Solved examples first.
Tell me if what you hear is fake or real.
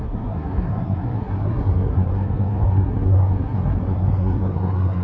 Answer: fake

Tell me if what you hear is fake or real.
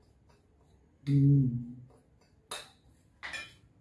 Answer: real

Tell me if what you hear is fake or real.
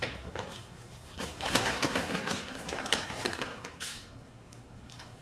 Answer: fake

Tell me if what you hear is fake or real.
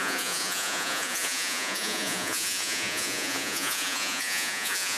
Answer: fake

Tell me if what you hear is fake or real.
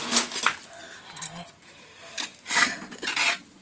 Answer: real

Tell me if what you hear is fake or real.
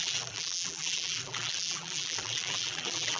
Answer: fake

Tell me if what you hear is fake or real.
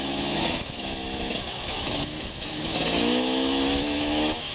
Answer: fake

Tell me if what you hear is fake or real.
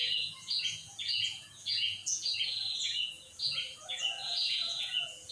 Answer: fake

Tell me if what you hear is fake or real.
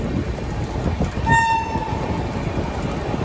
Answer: real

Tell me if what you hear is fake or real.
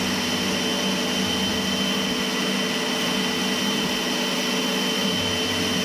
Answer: real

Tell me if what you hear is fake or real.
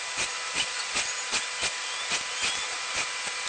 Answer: real